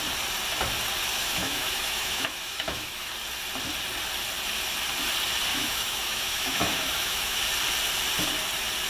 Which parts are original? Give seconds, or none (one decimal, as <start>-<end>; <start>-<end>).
0.0-1.2; 3.1-5.5; 7.4-8.9